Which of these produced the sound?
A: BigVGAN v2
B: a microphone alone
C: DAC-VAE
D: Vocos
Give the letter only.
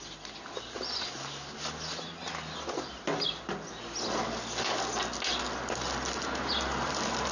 B